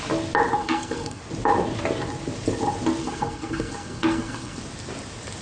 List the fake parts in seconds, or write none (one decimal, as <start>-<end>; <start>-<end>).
0.6-1.2; 3.0-4.6